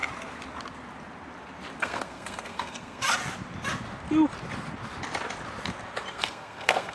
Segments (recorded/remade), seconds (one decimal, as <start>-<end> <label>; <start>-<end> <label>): 0.0-1.8 recorded; 1.8-3.0 remade; 3.0-6.1 recorded; 6.1-6.9 remade